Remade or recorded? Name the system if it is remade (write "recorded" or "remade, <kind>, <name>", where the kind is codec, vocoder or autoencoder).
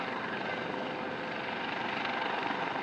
recorded